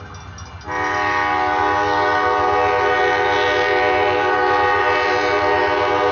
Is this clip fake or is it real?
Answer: real